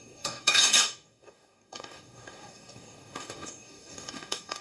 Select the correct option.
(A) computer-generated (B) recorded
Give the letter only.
A